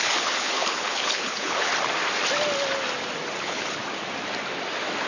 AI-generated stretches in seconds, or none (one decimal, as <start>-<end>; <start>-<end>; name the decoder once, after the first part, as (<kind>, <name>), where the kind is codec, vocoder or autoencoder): 0.0-1.7 (codec, HILCodec); 3.4-3.8

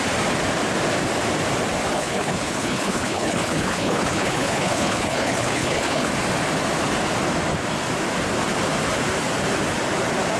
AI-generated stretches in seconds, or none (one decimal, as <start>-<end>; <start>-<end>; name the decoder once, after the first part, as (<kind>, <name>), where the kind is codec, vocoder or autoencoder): 1.9-6.1 (codec, HILCodec)

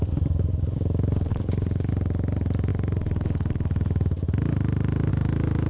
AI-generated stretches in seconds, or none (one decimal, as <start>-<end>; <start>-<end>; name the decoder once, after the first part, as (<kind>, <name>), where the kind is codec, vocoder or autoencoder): 1.3-1.9 (codec, HILCodec)

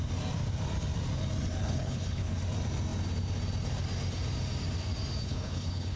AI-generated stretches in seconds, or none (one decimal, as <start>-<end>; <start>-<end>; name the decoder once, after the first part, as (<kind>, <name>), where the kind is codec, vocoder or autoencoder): 1.6-2.4 (codec, HILCodec); 5.2-6.0

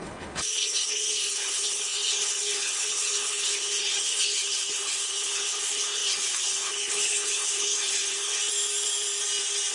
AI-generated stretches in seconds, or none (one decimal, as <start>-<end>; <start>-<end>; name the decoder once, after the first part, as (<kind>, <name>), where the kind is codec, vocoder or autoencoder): 0.0-8.4 (codec, HILCodec)